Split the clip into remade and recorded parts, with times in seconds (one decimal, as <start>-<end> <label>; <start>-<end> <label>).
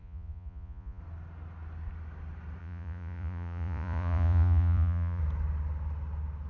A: 0.0-1.0 remade; 1.0-2.6 recorded; 2.6-5.2 remade; 5.2-6.5 recorded